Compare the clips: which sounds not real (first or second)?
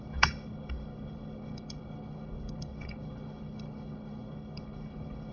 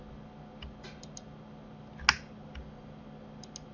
first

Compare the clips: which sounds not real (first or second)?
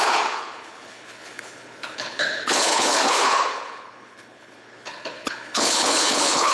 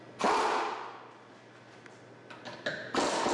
first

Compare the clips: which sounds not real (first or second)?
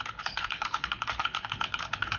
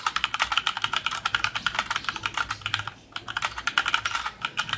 first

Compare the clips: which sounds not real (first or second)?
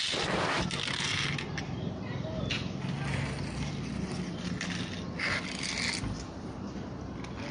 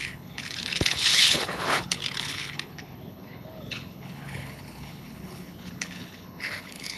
second